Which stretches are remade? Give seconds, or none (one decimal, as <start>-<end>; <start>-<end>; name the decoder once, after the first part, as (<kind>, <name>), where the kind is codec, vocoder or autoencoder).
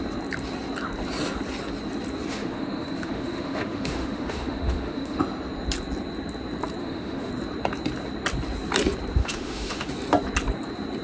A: 2.3-5.2 (autoencoder, DAC-VAE); 6.8-7.3; 9.2-9.9